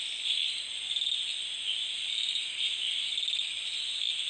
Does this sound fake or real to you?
real